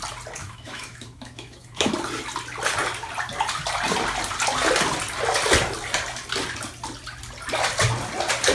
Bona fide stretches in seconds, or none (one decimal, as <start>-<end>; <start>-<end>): 0.0-0.4; 1.9-8.5